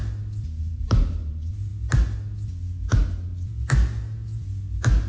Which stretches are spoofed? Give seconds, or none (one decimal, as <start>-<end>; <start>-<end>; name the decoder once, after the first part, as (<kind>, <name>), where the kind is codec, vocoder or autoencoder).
0.6-1.7 (vocoder, BigVGAN v2)